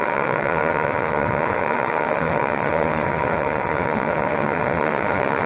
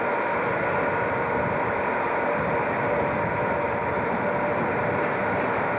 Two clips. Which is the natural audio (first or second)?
second